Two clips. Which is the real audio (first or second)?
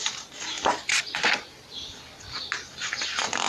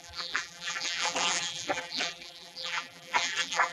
first